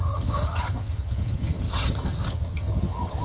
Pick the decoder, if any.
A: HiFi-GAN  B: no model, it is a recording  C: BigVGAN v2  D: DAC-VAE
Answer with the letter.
A